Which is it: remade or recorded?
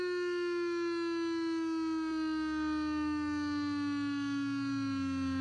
recorded